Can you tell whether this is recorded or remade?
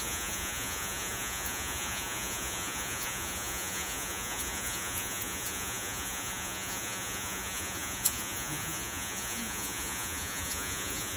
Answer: remade